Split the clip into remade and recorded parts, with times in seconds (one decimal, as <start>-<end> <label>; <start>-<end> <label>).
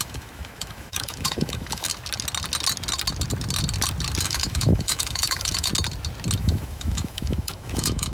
0.0-1.9 remade; 1.9-4.2 recorded; 4.2-5.7 remade; 5.7-6.4 recorded; 6.4-8.1 remade